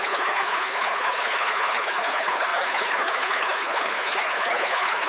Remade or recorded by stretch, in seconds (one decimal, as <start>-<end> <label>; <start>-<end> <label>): 0.0-5.1 remade